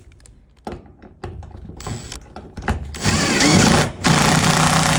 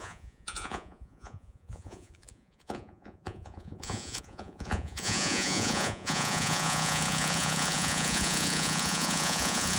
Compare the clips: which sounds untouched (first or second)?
first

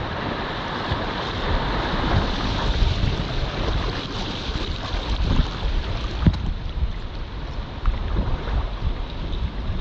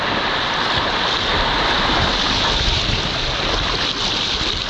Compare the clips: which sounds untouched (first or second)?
second